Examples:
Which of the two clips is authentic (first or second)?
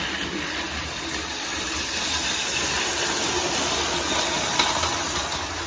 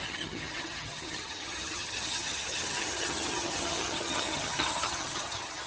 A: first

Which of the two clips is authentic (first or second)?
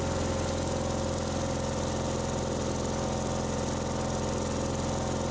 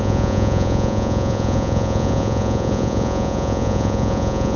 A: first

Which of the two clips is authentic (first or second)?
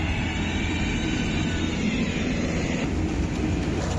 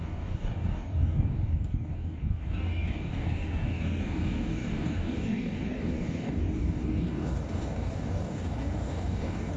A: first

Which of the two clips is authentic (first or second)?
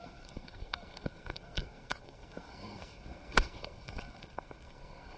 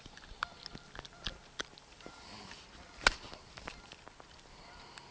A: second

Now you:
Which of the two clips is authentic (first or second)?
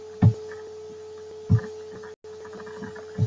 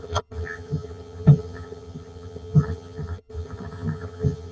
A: first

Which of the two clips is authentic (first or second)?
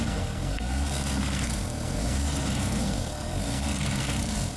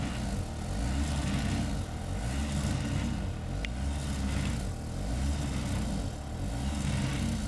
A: second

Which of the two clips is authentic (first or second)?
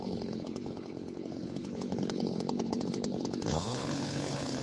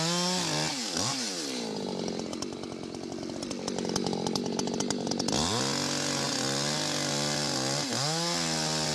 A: second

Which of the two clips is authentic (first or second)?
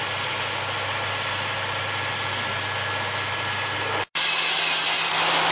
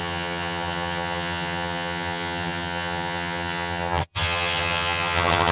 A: first